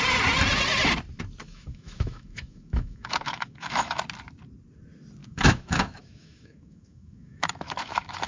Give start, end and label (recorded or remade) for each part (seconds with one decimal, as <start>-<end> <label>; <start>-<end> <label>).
0.0-1.4 recorded; 1.4-4.0 remade; 4.0-5.2 recorded; 5.2-8.3 remade